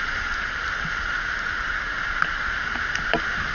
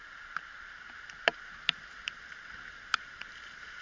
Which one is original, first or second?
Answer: first